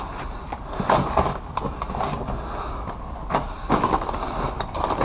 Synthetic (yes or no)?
no